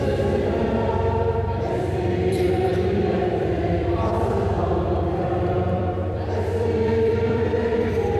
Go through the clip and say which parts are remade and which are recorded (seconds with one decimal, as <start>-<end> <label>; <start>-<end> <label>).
0.0-8.2 remade